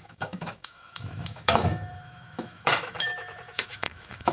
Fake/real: fake